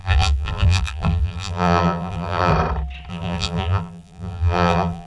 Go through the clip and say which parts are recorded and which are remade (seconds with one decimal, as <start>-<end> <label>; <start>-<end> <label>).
0.0-2.5 remade; 2.5-3.1 recorded; 3.1-5.1 remade